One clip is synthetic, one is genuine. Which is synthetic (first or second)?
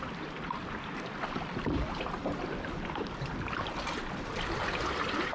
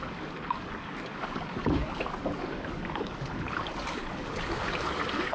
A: second